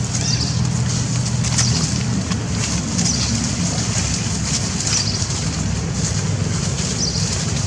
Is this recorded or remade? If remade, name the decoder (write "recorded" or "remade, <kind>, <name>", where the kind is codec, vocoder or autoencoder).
recorded